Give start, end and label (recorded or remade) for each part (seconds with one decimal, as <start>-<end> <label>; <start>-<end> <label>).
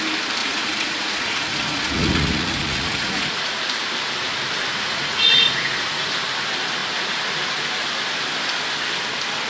0.0-0.4 recorded; 0.4-3.6 remade; 3.6-4.7 recorded; 4.7-6.1 remade; 6.1-9.5 recorded